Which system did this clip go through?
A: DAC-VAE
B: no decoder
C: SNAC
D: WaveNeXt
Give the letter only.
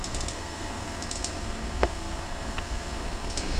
C